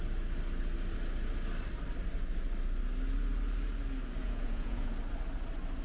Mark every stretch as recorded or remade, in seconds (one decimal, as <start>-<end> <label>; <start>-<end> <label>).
0.0-4.2 recorded; 4.2-4.9 remade; 4.9-5.8 recorded

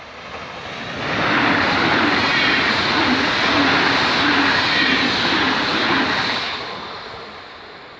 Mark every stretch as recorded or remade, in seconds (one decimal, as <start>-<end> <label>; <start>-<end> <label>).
0.0-2.2 recorded; 2.2-3.7 remade; 3.7-8.0 recorded

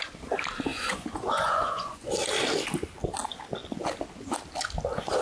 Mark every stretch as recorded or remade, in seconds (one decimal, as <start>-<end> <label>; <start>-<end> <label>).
0.0-0.7 recorded; 0.7-2.1 remade; 2.1-5.2 recorded